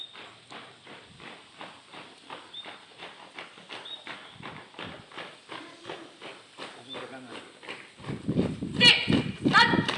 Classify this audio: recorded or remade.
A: recorded